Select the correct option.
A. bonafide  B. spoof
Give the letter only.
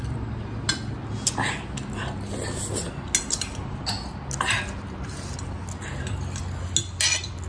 A